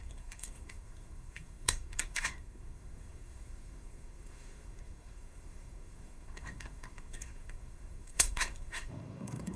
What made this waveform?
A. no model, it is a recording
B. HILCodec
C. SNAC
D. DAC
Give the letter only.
C